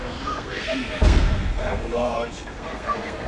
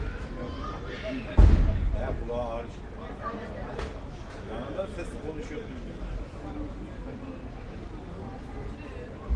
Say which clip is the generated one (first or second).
first